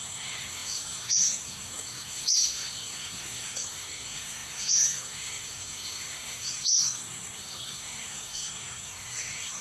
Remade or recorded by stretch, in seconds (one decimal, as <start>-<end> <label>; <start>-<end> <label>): 0.0-9.6 remade